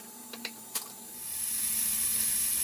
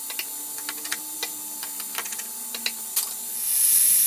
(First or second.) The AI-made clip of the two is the first